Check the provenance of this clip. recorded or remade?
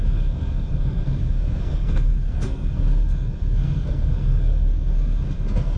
remade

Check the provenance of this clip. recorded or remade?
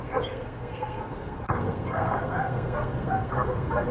remade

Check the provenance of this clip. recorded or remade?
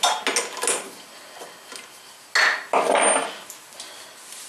recorded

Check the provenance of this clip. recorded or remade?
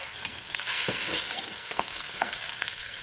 remade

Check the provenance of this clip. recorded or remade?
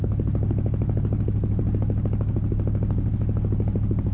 recorded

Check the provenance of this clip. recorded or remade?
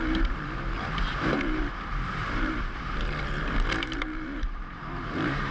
remade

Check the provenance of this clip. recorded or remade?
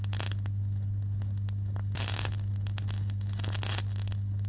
recorded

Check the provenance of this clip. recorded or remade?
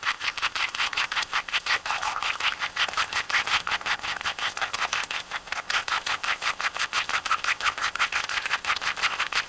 remade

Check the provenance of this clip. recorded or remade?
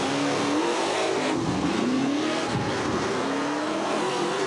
remade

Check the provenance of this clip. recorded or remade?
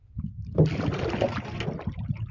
recorded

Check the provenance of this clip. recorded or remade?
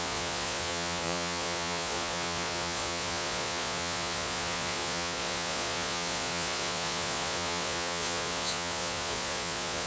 remade